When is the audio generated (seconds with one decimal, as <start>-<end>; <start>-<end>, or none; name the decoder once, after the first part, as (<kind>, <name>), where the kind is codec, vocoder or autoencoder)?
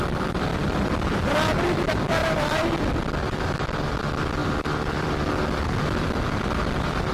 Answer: 0.5-1.3 (vocoder, BigVGAN v2); 2.2-2.8; 4.4-5.1